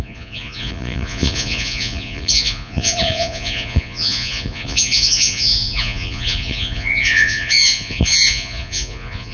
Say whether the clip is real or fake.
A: fake